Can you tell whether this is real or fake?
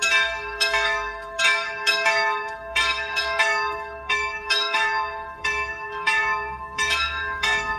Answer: fake